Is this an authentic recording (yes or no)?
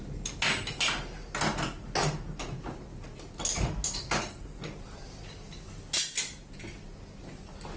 yes